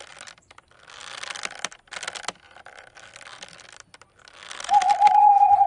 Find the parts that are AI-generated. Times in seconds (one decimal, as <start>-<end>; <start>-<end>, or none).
none